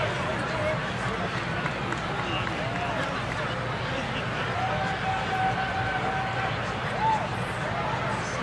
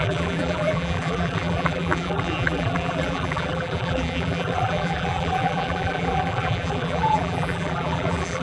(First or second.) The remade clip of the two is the second